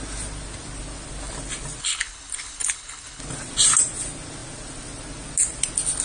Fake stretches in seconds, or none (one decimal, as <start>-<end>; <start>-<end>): 1.8-3.2